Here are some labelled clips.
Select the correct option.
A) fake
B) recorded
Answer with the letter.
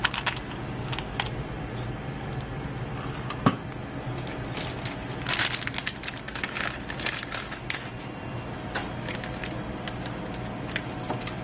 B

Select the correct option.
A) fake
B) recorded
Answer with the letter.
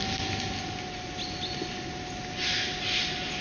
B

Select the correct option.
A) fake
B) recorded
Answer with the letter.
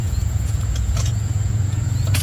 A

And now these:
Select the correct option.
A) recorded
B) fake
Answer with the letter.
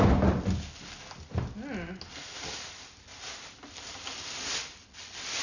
A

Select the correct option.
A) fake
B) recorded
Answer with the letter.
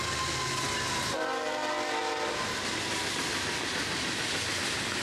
B